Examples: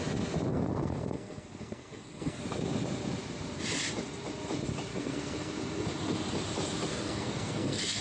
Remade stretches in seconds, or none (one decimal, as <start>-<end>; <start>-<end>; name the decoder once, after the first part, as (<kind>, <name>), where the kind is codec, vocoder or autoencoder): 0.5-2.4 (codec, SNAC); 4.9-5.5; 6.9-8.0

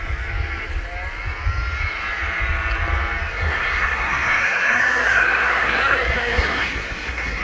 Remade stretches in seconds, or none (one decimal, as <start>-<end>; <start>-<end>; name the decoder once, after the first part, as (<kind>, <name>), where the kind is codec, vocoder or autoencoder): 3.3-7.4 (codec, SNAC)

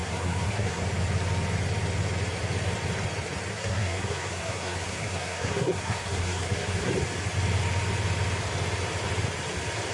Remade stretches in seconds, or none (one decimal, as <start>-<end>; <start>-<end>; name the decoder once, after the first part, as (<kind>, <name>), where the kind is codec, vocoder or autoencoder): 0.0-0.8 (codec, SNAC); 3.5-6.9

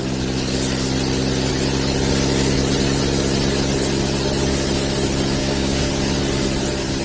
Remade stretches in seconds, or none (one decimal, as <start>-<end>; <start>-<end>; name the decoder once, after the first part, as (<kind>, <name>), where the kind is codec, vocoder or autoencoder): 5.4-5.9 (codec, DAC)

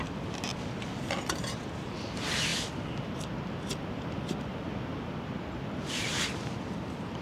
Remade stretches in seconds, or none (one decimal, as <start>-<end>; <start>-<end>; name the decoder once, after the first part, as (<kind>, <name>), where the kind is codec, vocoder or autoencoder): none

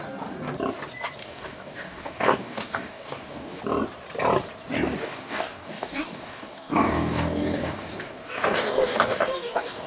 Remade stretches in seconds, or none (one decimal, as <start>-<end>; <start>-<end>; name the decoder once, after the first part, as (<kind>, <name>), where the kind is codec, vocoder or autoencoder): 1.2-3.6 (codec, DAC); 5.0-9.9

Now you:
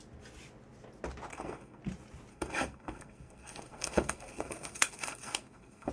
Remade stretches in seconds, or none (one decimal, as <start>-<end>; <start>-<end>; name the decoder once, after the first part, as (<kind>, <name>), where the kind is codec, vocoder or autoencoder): 1.3-1.8 (codec, SNAC); 2.3-5.9

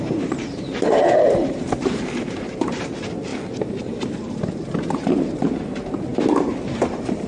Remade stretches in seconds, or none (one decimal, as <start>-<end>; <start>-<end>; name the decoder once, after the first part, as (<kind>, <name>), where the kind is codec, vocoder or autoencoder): 0.0-3.3 (vocoder, BigVGAN v2); 4.0-6.1; 6.8-7.3